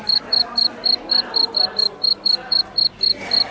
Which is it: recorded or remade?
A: recorded